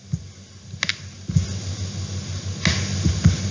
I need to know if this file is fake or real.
real